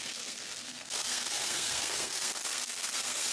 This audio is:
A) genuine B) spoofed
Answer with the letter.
B